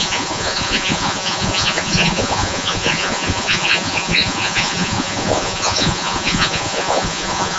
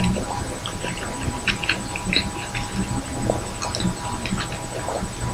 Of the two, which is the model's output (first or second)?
first